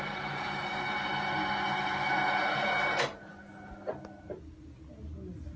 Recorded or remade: recorded